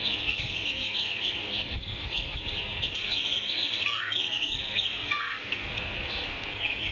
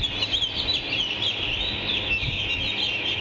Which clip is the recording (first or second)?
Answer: second